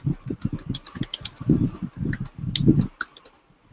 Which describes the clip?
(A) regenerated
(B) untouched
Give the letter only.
B